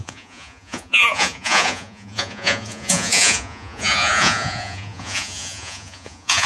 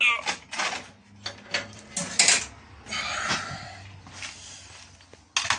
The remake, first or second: first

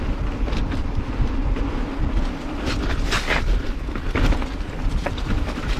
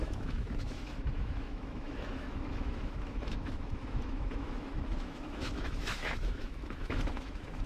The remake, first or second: second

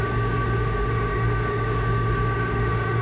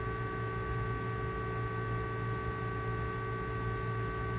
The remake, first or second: first